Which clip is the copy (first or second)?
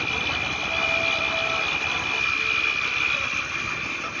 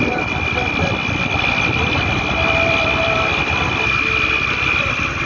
second